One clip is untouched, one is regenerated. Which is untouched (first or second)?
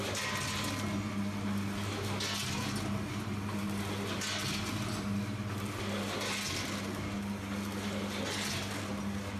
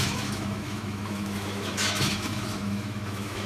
first